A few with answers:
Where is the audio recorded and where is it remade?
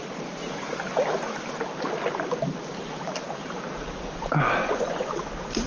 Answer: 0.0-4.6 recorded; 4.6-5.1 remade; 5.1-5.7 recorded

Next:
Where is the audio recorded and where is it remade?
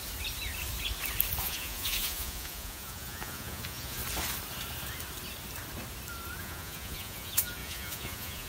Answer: 0.0-1.4 recorded; 1.4-4.0 remade; 4.0-6.4 recorded; 6.4-8.5 remade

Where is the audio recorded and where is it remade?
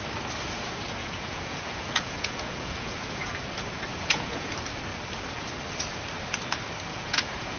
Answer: 0.0-1.0 recorded; 1.0-3.3 remade; 3.3-3.9 recorded; 3.9-4.5 remade; 4.5-6.9 recorded; 6.9-7.6 remade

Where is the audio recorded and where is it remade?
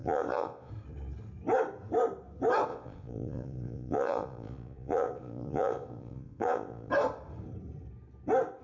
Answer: 0.0-0.7 remade; 0.7-2.7 recorded; 2.7-6.9 remade; 6.9-8.6 recorded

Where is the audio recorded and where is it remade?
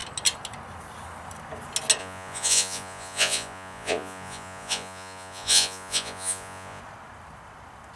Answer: 0.0-2.0 recorded; 2.0-6.8 remade; 6.8-8.0 recorded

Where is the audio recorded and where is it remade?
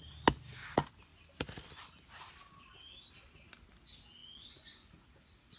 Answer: 0.0-4.2 recorded; 4.2-4.9 remade; 4.9-5.6 recorded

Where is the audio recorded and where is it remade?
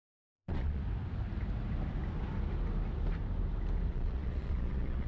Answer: 0.0-0.8 remade; 0.8-3.9 recorded; 3.9-5.1 remade